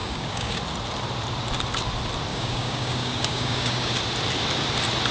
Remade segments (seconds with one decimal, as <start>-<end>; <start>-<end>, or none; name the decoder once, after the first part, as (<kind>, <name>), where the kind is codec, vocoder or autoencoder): 0.0-0.6 (codec, DAC); 2.3-4.0